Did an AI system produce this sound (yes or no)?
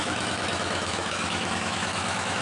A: yes